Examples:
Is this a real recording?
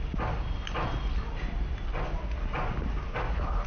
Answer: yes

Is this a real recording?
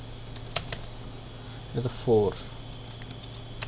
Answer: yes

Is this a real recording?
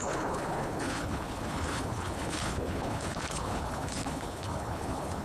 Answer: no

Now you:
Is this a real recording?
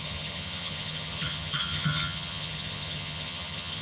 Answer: no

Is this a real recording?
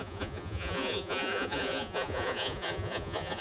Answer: no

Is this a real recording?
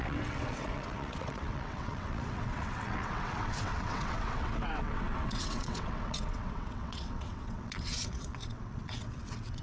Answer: no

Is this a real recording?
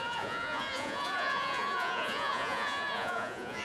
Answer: no